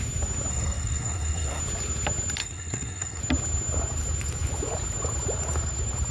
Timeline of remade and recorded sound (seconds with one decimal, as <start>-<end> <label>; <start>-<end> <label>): 0.0-0.5 recorded; 0.5-1.6 remade; 1.6-2.4 recorded; 2.4-3.2 remade; 3.2-6.1 recorded